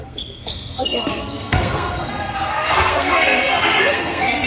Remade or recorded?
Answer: remade